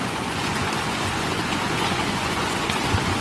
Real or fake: fake